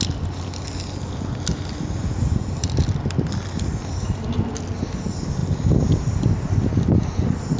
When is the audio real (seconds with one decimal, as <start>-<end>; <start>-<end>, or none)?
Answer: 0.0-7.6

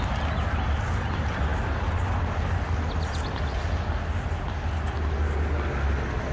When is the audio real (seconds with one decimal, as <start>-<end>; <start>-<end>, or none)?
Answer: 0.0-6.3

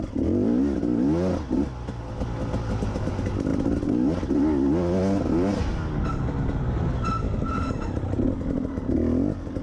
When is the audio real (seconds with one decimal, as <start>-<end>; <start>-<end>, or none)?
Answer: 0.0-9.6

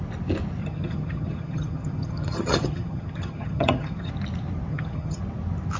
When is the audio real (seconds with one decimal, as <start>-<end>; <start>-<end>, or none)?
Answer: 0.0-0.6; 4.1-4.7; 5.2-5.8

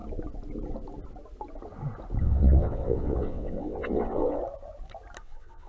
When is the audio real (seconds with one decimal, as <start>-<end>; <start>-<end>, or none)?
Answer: 0.0-2.2; 4.4-5.2